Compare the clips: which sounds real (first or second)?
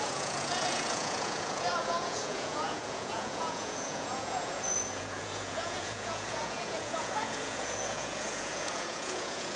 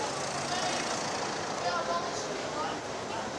second